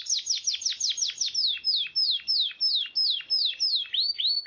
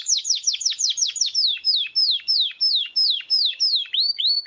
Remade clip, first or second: second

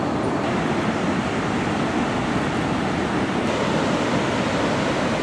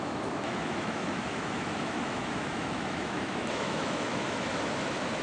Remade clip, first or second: second